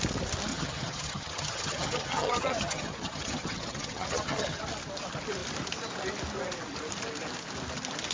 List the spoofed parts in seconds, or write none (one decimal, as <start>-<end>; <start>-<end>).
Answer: 0.5-4.6